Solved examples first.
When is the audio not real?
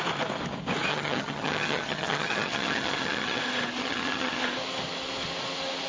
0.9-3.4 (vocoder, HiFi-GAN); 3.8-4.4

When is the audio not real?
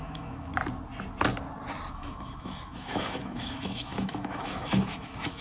0.0-0.5 (autoencoder, DAC-VAE); 1.9-5.4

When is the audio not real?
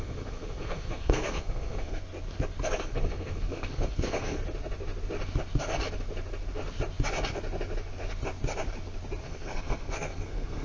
0.0-2.0 (codec, SNAC); 2.7-4.4; 9.2-10.6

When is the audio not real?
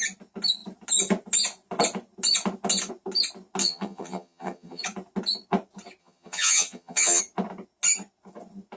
3.6-4.8 (vocoder, HiFi-GAN); 6.0-7.2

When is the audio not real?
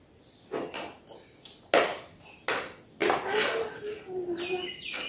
none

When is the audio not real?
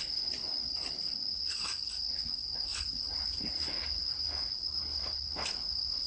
0.0-6.1 (codec, HILCodec)